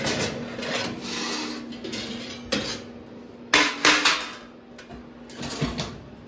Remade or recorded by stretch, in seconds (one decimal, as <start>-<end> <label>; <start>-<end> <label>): 0.0-6.3 recorded